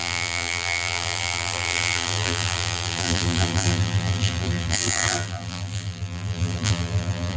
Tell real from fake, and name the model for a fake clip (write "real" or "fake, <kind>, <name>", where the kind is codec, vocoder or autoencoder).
fake, vocoder, BigVGAN v2